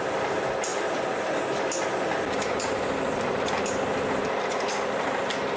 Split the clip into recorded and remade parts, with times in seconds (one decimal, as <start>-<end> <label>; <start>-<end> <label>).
0.0-5.6 recorded